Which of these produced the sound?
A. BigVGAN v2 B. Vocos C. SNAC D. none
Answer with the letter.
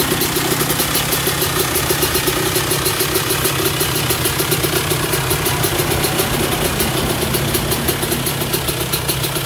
D